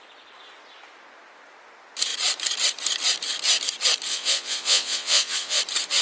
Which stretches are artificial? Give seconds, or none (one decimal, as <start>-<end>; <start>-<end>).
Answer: 4.1-5.6

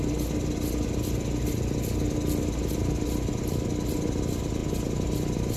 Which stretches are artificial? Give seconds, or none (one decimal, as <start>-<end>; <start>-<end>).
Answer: none

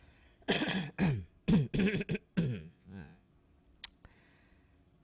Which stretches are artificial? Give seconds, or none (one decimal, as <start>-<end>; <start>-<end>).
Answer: 2.6-3.3

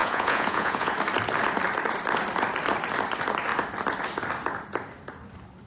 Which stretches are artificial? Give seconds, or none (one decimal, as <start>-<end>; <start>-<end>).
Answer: 0.0-0.9

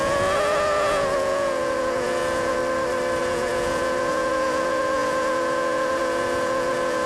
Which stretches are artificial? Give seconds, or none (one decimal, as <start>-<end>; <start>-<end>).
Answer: 0.0-2.6; 3.2-7.1

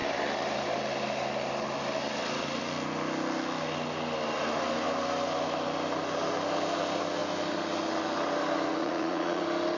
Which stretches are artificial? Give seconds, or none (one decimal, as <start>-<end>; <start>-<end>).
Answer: 8.8-9.4